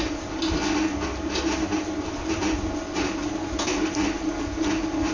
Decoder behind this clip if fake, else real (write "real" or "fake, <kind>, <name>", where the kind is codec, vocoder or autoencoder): real